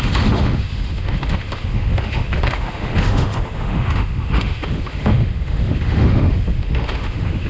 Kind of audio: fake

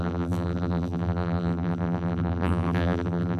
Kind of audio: fake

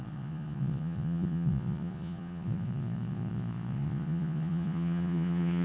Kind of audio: fake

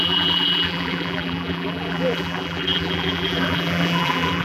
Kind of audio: fake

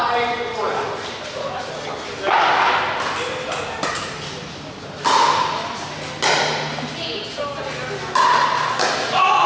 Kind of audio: real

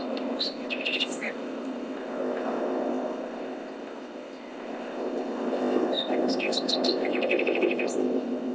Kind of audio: fake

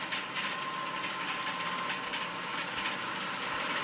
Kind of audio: real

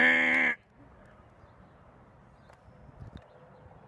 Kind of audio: real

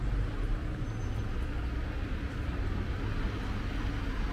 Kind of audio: real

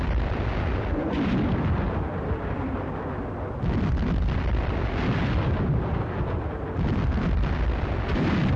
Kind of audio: real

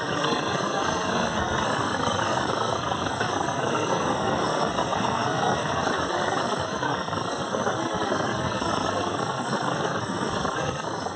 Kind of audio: fake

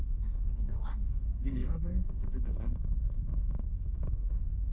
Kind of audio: fake